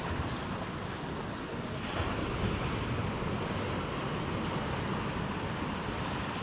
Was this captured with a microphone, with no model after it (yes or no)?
yes